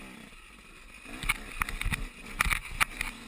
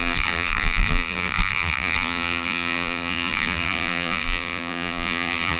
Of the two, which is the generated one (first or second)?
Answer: second